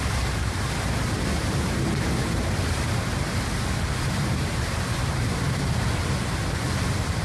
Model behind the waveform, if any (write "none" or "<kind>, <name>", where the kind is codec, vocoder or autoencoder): vocoder, BigVGAN v2